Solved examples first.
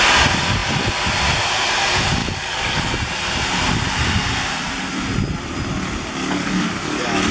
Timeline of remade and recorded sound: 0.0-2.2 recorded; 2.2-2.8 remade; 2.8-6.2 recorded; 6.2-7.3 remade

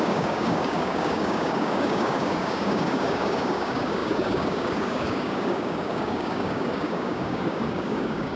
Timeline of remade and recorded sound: 0.0-8.4 remade

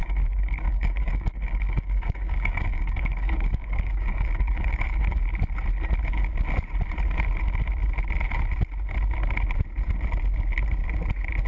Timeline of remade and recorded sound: 0.0-5.2 remade; 5.2-11.5 recorded

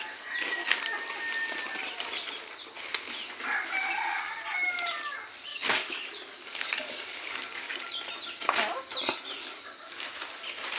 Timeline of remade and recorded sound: 0.0-5.5 recorded; 5.5-7.7 remade; 7.7-9.4 recorded; 9.4-10.0 remade; 10.0-10.8 recorded

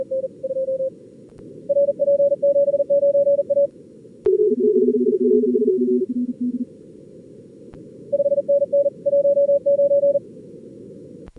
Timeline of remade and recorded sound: 0.0-11.4 recorded

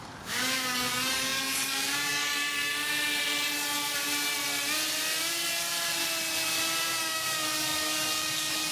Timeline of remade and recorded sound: 0.0-2.7 remade; 2.7-7.0 recorded; 7.0-8.7 remade

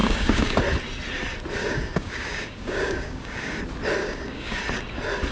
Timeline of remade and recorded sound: 0.0-0.6 remade; 0.6-1.6 recorded; 1.6-3.6 remade; 3.6-4.0 recorded; 4.0-4.6 remade; 4.6-5.3 recorded